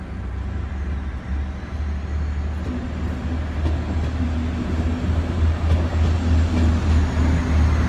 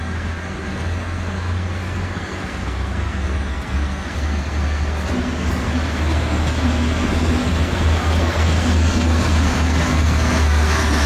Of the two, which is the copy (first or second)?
second